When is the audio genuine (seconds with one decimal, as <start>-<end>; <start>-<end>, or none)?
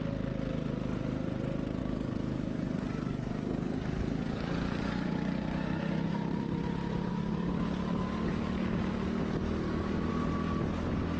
0.0-1.8; 6.4-7.1; 10.1-11.2